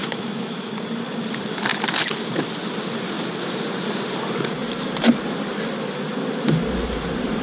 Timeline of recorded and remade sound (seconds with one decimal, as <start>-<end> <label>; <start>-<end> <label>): 0.0-0.7 remade; 0.7-7.4 recorded